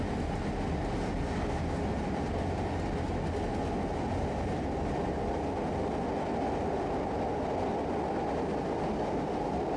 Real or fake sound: real